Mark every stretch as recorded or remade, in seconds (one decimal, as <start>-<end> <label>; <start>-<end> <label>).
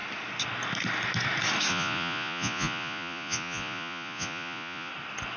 0.0-1.7 recorded; 1.7-4.9 remade; 4.9-5.4 recorded